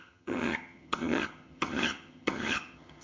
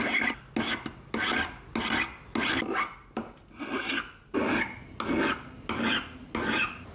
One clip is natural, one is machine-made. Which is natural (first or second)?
second